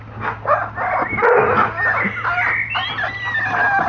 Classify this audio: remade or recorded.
recorded